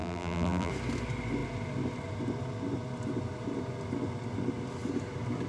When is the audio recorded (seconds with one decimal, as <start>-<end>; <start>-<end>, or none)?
0.7-5.5